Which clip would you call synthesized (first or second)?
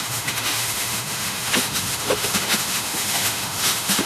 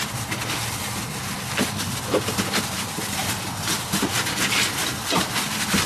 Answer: first